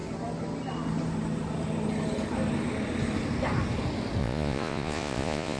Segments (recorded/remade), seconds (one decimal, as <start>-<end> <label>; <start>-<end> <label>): 0.0-4.2 recorded; 4.2-5.6 remade